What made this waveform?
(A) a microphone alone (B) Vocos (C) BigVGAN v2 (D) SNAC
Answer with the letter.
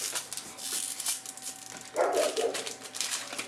A